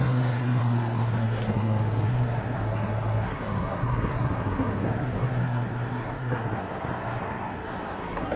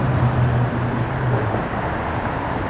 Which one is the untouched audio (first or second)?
second